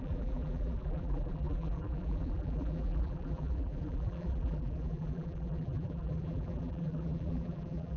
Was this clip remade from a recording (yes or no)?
yes